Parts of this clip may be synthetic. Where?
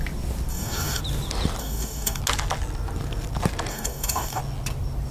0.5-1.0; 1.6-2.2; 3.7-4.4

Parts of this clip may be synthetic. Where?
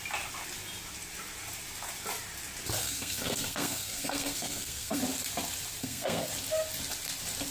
2.8-5.0; 5.8-6.3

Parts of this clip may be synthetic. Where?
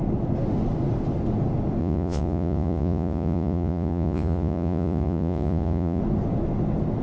1.8-6.0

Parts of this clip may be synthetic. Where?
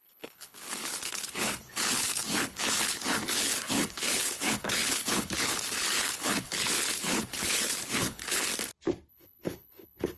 0.0-8.5; 9.1-10.2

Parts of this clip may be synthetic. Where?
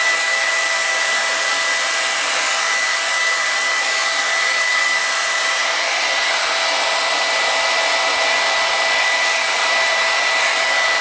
0.0-1.7; 2.4-5.0; 9.0-9.6; 10.4-11.0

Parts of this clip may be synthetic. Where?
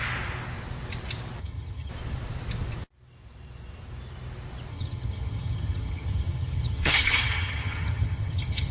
1.4-1.9; 4.7-8.7